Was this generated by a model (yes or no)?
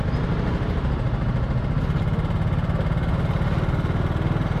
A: no